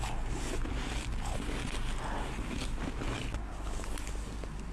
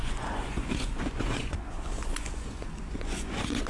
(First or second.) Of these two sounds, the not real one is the second